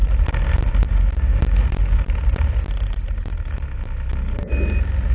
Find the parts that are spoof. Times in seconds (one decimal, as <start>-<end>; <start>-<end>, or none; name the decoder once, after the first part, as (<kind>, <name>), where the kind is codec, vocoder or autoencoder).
none